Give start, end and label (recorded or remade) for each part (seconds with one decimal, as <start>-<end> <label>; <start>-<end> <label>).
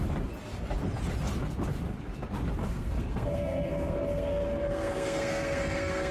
0.0-2.6 recorded; 2.6-6.1 remade